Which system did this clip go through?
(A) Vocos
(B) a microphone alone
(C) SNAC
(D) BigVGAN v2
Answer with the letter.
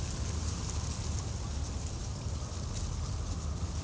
B